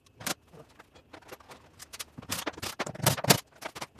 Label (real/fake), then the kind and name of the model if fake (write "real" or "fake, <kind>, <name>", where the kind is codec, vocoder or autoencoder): real